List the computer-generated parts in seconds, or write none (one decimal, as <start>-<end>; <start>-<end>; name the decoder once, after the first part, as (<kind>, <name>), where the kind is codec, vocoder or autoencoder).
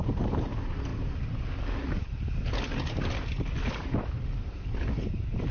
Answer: none